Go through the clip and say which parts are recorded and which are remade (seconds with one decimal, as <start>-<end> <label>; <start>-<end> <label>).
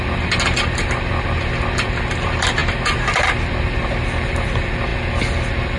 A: 0.0-5.8 recorded